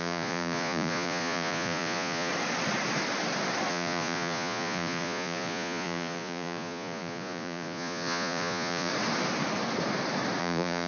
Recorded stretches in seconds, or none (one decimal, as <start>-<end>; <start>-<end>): 2.3-3.7; 8.9-10.4